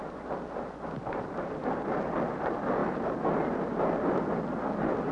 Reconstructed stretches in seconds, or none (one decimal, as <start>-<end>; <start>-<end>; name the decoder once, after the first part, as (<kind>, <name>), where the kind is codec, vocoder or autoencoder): none